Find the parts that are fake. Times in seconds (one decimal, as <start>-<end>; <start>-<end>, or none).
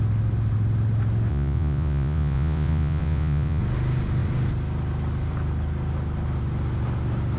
1.3-3.6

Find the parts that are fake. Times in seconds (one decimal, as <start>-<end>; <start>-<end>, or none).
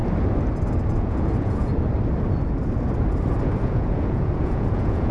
1.0-1.7; 3.6-5.1